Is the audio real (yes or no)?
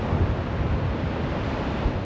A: yes